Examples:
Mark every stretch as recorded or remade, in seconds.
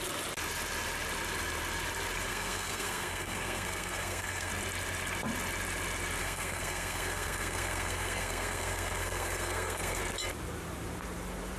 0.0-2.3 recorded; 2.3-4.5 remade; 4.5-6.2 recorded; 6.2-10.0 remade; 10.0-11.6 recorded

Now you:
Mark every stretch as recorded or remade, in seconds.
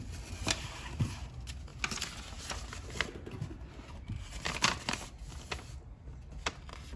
0.0-7.0 recorded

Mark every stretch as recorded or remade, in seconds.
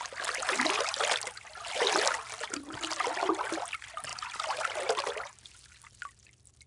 0.0-6.7 recorded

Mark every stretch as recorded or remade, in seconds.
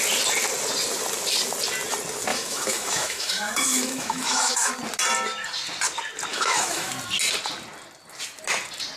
0.0-2.3 recorded; 2.3-4.7 remade; 4.7-6.3 recorded; 6.3-6.9 remade; 6.9-9.0 recorded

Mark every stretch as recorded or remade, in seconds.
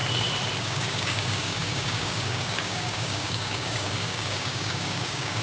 0.0-0.6 recorded; 0.6-5.4 remade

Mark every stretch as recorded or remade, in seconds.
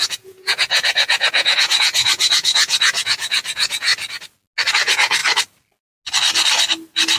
0.0-3.9 remade; 3.9-4.7 recorded; 4.7-5.2 remade; 5.2-7.2 recorded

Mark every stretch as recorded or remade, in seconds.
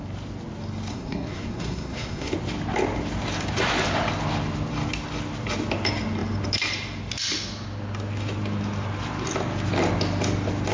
0.0-0.9 recorded; 0.9-2.3 remade; 2.3-10.7 recorded